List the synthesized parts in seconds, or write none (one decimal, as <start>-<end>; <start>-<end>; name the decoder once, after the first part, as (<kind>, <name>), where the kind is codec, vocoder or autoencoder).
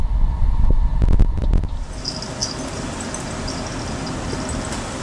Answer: none